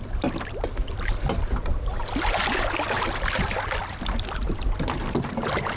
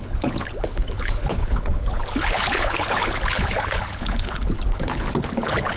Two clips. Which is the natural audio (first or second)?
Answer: first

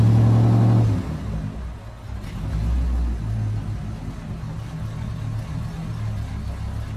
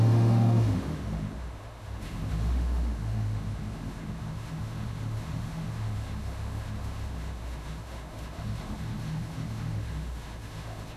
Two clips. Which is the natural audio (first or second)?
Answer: first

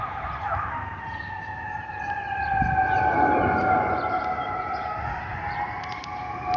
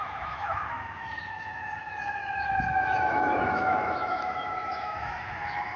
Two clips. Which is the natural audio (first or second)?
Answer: first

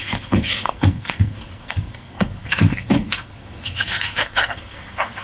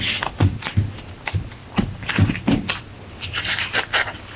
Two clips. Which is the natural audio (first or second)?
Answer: second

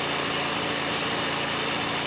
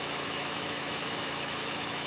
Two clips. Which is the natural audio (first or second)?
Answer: first